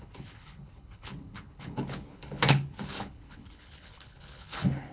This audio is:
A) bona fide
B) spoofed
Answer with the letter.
B